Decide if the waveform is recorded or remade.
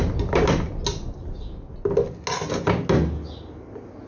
recorded